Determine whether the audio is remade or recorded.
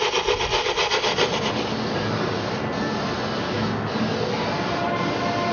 recorded